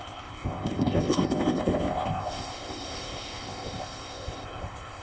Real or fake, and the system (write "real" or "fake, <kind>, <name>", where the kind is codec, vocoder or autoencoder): fake, codec, ZipCodec